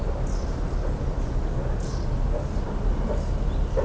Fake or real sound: real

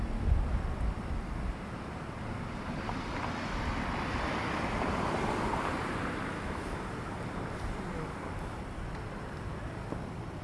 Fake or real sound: real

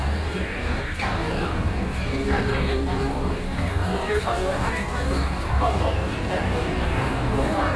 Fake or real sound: fake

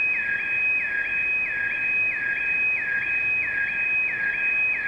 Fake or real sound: real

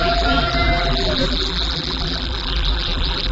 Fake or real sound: fake